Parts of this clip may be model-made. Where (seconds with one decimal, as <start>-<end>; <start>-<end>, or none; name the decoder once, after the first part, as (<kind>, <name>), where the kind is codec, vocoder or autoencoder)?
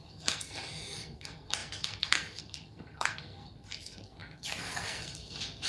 0.0-5.7 (codec, SNAC)